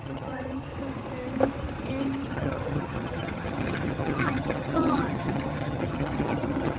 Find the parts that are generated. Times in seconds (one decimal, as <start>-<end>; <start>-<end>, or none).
0.0-0.7; 2.3-6.8